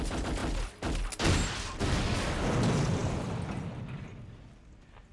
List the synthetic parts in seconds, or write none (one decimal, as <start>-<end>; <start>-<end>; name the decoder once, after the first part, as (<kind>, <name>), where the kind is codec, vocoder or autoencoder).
none